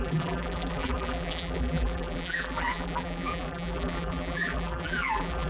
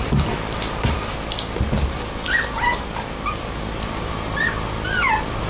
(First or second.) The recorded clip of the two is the second